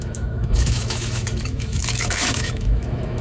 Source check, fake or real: fake